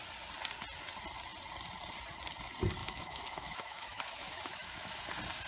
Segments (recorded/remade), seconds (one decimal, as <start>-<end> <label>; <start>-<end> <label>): 0.0-2.8 recorded; 2.8-5.0 remade; 5.0-5.5 recorded